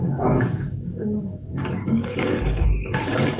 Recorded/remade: remade